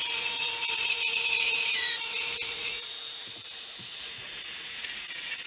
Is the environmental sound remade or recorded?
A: remade